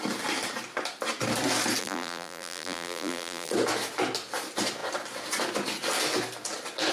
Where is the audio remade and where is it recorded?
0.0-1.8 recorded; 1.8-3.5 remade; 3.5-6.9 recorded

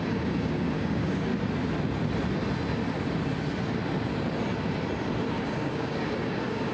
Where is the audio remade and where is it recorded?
0.0-1.3 remade; 1.3-5.3 recorded; 5.3-6.7 remade

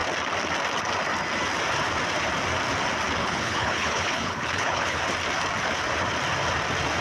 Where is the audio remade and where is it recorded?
0.0-3.2 recorded; 3.2-5.0 remade; 5.0-7.0 recorded

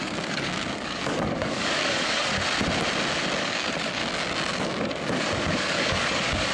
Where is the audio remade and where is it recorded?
0.0-2.3 remade; 2.3-3.4 recorded; 3.4-4.0 remade; 4.0-4.6 recorded; 4.6-6.5 remade

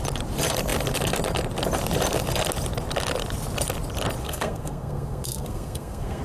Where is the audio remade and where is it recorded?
0.0-4.2 recorded; 4.2-6.2 remade

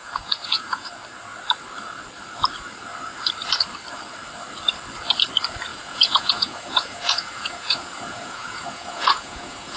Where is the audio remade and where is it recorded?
0.0-0.9 remade; 0.9-5.7 recorded; 5.7-9.8 remade

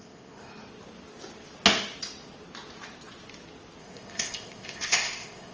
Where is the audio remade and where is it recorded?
0.0-0.5 remade; 0.5-3.8 recorded; 3.8-5.5 remade